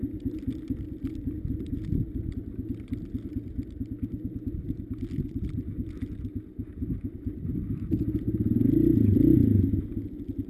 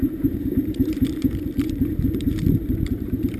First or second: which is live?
first